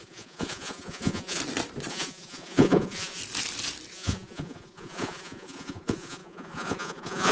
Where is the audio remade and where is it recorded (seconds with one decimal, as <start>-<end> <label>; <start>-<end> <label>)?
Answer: 0.0-1.4 remade; 1.4-1.9 recorded; 1.9-3.2 remade; 3.2-3.9 recorded; 3.9-7.3 remade